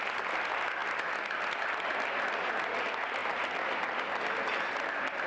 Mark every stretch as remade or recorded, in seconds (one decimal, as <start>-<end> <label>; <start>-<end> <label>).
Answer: 0.0-5.3 recorded